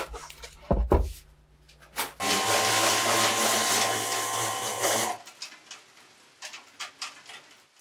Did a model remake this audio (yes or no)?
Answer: no